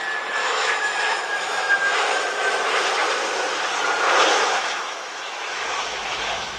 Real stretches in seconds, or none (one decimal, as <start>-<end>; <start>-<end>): 0.0-0.4; 2.6-4.5